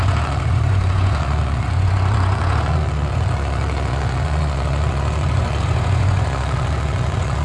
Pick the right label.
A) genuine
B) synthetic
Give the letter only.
B